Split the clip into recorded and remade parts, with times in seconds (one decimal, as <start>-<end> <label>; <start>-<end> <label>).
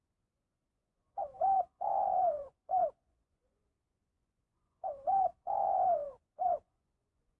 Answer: 0.0-7.4 remade